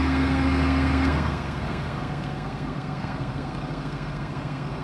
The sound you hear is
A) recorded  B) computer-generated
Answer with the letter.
B